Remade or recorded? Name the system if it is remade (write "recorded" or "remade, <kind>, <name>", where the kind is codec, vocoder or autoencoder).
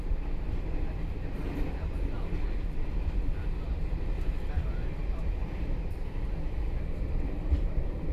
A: remade, vocoder, BigVGAN v2